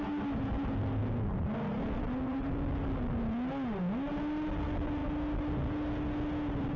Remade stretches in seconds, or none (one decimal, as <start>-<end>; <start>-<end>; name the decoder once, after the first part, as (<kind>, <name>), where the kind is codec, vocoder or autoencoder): none